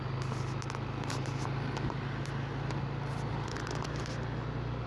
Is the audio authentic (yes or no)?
yes